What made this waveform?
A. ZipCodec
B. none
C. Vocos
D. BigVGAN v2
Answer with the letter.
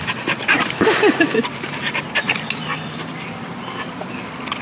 B